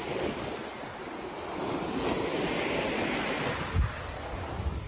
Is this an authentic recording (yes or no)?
yes